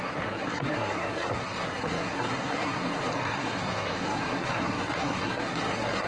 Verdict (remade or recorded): remade